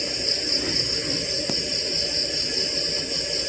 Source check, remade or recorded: recorded